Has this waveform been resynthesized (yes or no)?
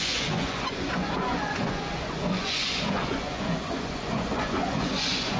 yes